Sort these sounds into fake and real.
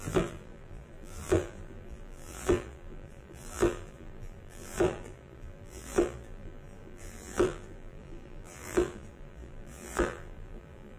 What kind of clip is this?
fake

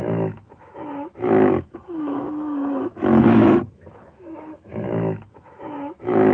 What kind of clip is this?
fake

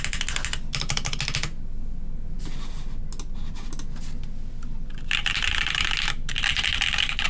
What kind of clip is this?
real